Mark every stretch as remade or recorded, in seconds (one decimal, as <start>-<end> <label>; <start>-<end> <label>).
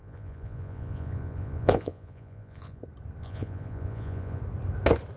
0.0-2.8 remade; 2.8-3.2 recorded; 3.2-4.4 remade; 4.4-5.2 recorded